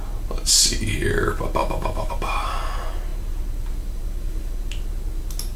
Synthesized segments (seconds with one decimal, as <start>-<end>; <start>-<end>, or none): 1.6-2.1